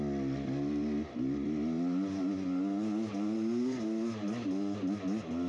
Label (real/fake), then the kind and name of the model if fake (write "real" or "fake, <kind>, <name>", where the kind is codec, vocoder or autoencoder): real